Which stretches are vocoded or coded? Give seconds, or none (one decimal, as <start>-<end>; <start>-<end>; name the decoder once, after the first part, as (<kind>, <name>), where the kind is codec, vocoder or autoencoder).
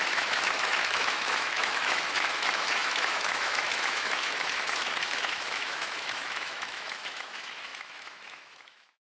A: 0.0-9.0 (autoencoder, DAC-VAE)